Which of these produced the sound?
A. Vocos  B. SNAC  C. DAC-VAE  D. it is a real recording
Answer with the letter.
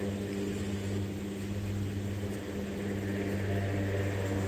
D